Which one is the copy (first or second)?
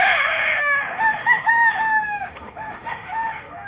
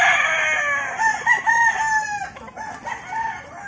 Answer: first